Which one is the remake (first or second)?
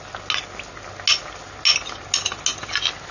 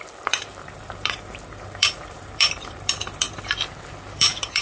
second